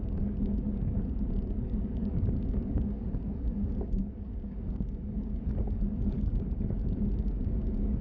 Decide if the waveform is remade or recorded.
remade